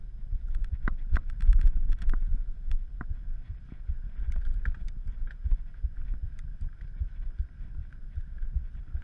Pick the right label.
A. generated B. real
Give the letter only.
B